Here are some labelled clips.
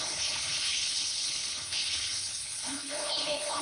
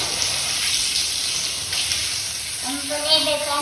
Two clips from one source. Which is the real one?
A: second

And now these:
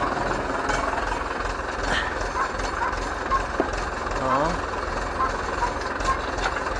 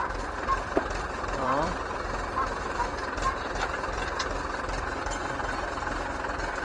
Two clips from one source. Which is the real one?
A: first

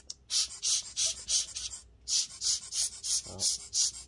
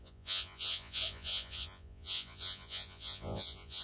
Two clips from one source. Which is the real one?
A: first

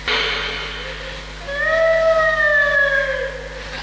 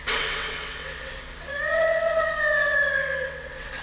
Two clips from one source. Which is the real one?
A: first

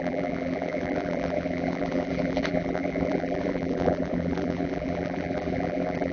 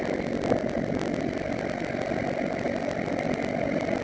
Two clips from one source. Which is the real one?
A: second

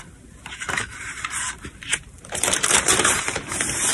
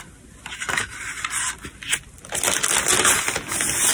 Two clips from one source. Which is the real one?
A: second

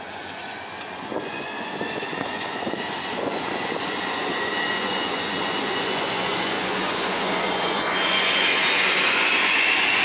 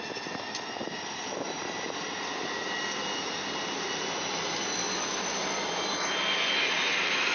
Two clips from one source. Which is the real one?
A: second